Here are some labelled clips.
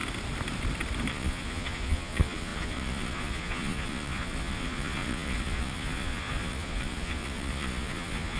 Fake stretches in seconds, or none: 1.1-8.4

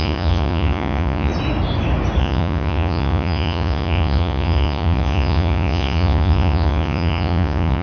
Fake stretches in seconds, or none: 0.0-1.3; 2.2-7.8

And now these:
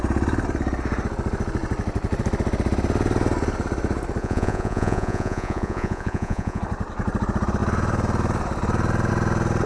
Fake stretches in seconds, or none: 4.2-6.6

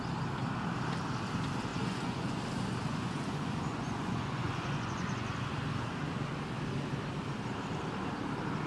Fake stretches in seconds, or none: 1.7-2.4; 2.9-5.5